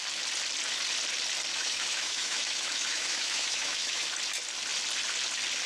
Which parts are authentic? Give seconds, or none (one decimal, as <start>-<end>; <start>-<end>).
0.0-1.5; 4.1-5.7